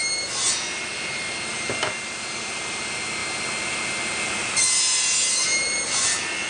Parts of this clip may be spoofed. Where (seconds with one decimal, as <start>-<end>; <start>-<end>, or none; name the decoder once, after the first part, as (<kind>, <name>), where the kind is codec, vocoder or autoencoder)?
none